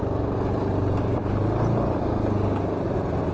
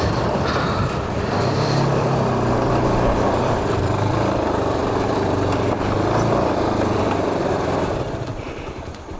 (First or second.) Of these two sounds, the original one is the first